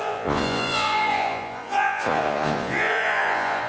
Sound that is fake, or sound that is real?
fake